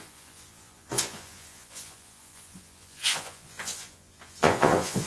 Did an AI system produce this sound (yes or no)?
yes